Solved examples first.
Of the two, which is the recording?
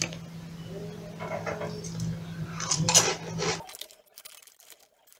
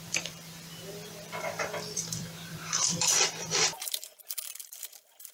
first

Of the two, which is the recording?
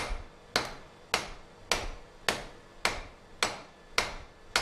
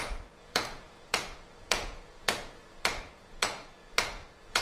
first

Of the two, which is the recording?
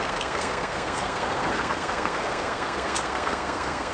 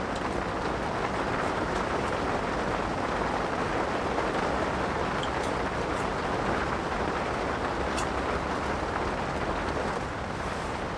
second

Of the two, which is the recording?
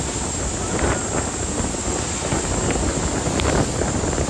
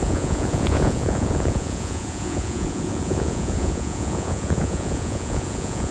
first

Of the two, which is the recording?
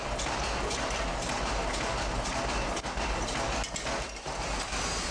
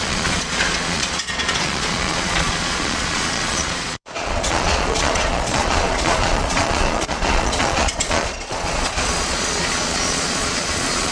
first